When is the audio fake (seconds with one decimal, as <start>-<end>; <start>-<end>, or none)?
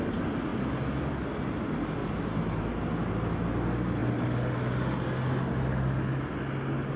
2.0-2.6